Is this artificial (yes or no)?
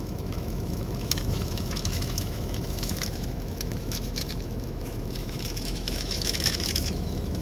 yes